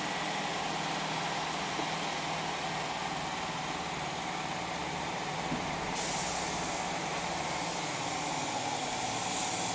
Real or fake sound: real